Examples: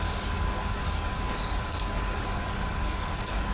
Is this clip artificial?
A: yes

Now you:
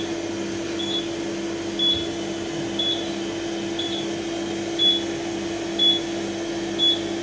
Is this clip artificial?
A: no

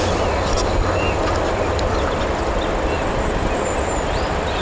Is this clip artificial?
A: no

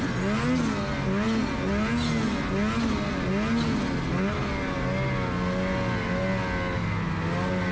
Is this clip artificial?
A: no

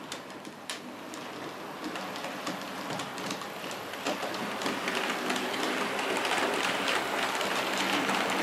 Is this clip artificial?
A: no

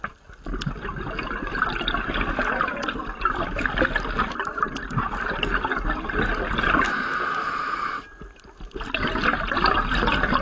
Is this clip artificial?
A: no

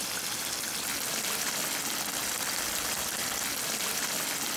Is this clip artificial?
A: no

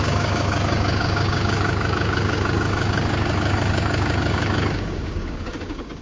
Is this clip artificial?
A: yes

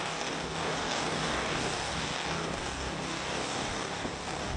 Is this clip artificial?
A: yes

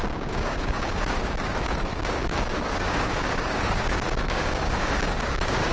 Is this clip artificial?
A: yes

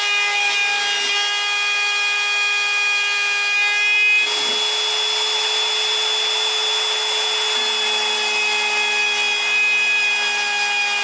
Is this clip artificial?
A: no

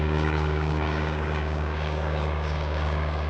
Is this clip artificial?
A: yes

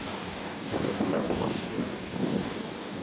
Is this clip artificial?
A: yes